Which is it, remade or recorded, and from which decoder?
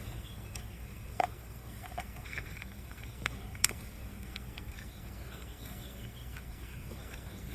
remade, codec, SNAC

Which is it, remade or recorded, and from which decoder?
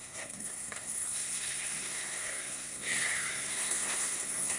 remade, codec, SNAC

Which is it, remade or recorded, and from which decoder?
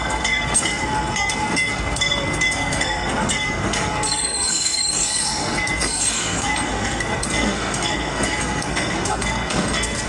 remade, codec, SNAC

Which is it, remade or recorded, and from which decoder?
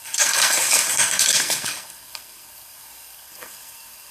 remade, codec, SNAC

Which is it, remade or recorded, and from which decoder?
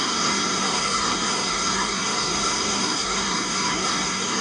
remade, codec, SNAC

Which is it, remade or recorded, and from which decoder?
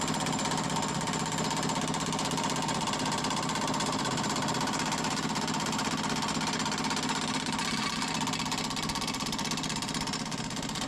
recorded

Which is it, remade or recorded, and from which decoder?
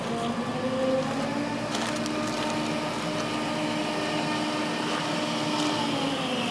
recorded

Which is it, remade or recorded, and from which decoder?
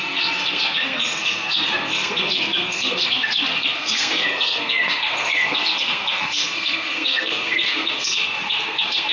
remade, codec, SNAC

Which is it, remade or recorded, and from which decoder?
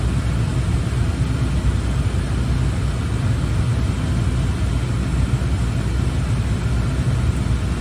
recorded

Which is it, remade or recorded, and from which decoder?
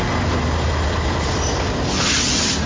recorded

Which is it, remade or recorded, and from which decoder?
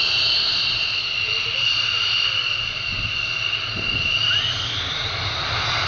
recorded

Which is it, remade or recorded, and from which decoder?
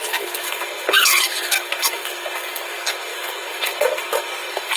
remade, codec, SNAC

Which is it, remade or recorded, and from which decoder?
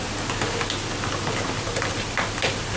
recorded